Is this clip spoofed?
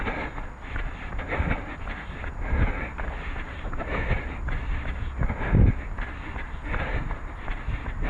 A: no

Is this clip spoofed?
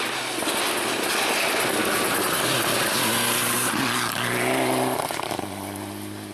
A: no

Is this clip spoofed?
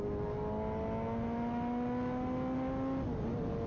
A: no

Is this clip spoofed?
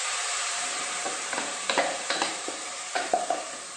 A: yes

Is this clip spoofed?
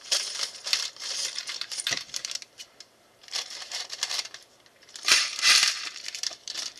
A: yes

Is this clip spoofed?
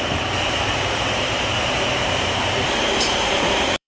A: yes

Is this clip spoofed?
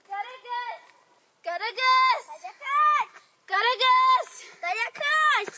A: yes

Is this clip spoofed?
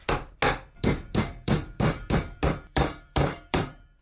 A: yes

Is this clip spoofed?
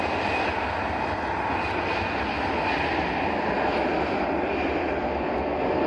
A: no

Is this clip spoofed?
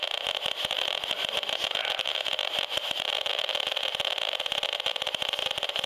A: yes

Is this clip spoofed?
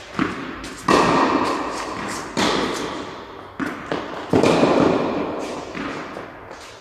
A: no